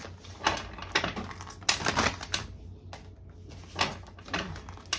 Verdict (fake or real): real